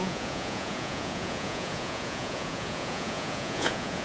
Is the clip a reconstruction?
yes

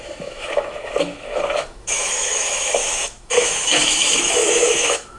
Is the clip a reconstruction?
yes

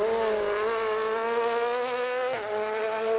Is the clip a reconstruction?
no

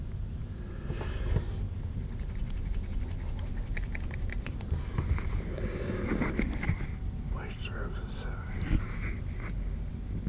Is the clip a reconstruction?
no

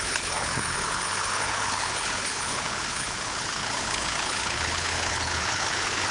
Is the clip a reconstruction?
yes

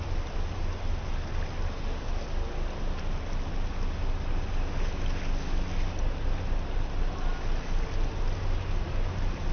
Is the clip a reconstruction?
no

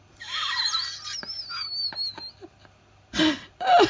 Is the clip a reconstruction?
no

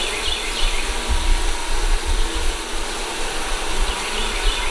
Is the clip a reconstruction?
no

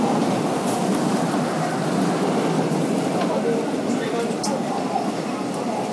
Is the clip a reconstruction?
no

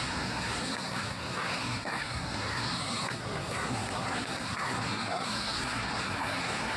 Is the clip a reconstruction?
yes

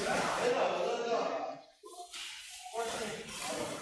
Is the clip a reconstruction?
no